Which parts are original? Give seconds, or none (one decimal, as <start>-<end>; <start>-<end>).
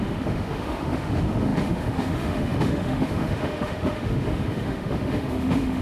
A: none